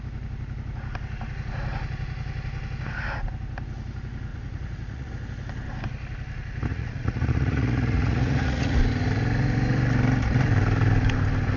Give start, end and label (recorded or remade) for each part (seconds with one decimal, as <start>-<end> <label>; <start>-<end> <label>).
0.0-4.3 recorded; 4.3-5.1 remade; 5.1-6.7 recorded; 6.7-8.8 remade; 8.8-11.6 recorded